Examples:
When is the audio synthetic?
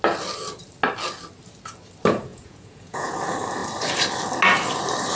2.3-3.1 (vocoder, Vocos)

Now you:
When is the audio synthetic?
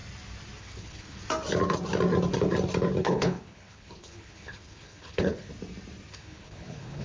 0.6-1.2 (codec, HILCodec); 3.0-5.5; 6.1-7.0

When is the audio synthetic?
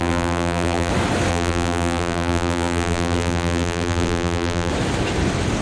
0.0-0.9 (vocoder, BigVGAN v2); 1.3-4.7